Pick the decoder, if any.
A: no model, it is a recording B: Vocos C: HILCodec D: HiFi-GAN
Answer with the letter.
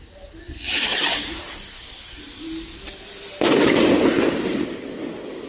A